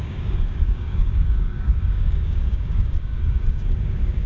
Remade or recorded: remade